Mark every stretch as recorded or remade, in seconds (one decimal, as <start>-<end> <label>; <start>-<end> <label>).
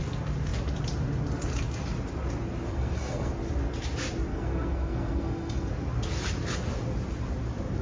0.0-2.7 recorded; 2.7-3.3 remade; 3.3-4.3 recorded; 4.3-5.7 remade; 5.7-7.8 recorded